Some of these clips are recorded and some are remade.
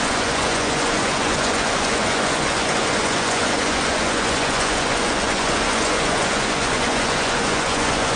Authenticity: remade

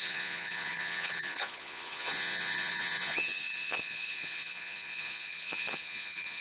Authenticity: remade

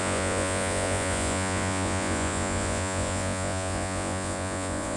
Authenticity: remade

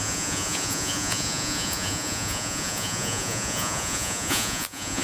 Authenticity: remade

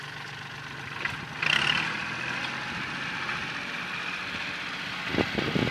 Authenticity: recorded